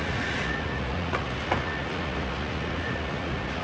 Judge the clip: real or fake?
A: fake